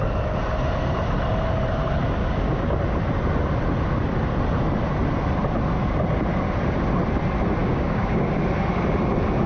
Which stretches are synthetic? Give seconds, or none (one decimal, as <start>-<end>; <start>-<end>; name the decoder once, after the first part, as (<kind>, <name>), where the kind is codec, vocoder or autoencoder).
2.2-2.8 (codec, DAC); 7.6-8.3